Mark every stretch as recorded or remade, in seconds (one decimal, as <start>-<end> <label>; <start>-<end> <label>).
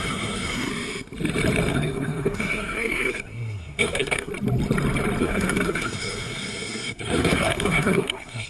0.0-0.7 remade; 0.7-1.7 recorded; 1.7-4.3 remade; 4.3-5.2 recorded; 5.2-8.5 remade